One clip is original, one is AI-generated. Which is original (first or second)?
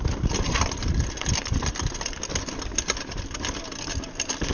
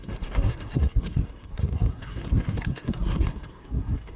first